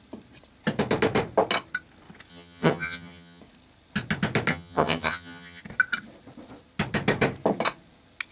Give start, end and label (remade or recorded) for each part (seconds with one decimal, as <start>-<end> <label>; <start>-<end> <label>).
0.0-2.3 recorded; 2.3-3.4 remade; 3.4-4.5 recorded; 4.5-5.6 remade; 5.6-8.3 recorded